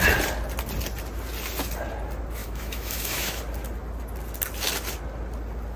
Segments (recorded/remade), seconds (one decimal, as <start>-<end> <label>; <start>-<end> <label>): 0.0-2.4 recorded; 2.4-3.4 remade; 3.4-5.8 recorded